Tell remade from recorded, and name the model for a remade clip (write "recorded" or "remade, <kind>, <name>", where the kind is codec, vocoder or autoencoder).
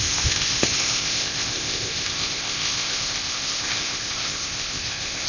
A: remade, codec, ZipCodec